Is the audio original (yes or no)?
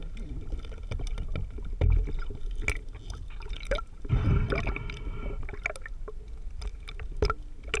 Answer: yes